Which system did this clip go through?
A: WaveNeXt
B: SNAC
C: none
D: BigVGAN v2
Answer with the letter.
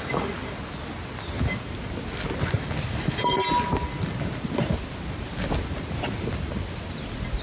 C